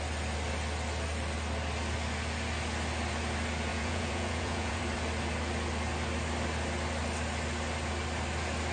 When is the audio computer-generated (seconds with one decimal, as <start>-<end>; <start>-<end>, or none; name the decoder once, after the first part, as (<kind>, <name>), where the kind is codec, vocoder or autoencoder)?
3.7-4.8 (vocoder, Vocos)